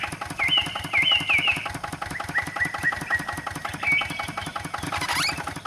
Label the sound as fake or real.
real